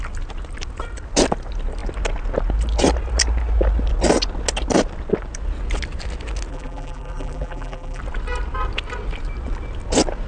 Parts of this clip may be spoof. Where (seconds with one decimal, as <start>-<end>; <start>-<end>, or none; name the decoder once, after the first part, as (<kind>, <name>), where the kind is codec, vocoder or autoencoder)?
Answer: 6.5-8.0 (vocoder, BigVGAN v2)